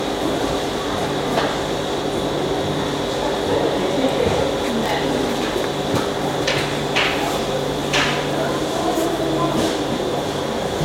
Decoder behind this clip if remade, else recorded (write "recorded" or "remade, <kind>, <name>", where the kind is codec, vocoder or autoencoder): recorded